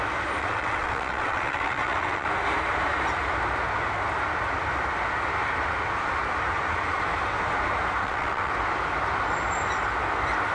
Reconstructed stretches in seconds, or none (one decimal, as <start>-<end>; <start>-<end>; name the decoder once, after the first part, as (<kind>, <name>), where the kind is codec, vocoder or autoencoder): 0.4-2.3 (vocoder, WaveNeXt); 8.0-8.5